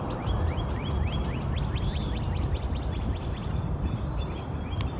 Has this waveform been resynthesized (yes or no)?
no